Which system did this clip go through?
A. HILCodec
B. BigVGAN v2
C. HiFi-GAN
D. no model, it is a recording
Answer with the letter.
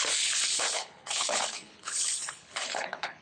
A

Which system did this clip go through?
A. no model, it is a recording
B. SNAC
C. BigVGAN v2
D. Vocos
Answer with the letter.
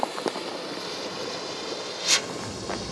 A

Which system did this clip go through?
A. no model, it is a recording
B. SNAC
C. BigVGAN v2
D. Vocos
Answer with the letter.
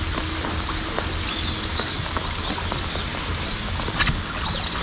A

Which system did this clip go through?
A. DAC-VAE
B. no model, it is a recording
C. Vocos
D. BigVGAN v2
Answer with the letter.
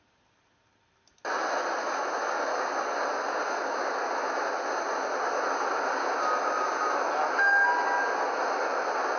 B